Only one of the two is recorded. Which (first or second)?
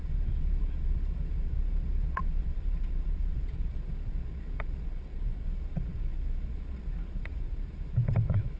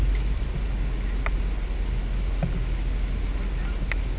second